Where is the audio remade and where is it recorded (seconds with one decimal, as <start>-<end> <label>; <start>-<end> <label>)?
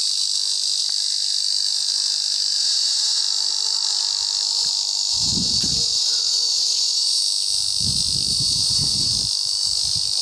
0.0-2.6 recorded; 2.6-3.2 remade; 3.2-5.1 recorded; 5.1-7.2 remade; 7.2-8.3 recorded; 8.3-9.1 remade; 9.1-10.2 recorded